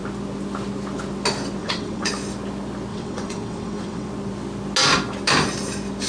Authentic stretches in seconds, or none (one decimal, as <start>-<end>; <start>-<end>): 0.0-1.6; 2.1-2.9; 4.1-6.1